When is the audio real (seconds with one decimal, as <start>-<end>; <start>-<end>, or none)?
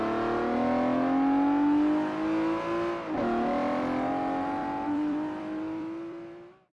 0.0-4.6